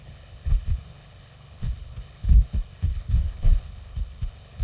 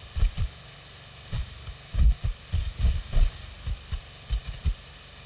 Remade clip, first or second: first